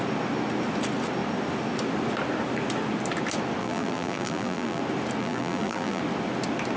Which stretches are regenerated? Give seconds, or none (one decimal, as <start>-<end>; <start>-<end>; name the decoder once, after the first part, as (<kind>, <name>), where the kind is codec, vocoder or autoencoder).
3.6-4.8 (vocoder, BigVGAN v2); 5.2-6.0